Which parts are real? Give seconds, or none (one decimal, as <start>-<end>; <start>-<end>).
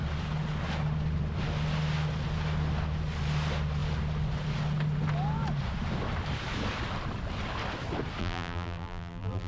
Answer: 0.0-8.2